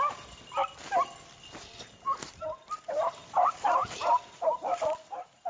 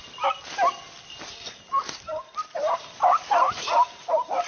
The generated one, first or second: first